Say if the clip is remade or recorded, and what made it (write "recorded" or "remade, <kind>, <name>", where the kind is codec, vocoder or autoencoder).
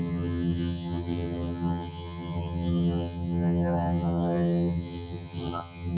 remade, vocoder, HiFi-GAN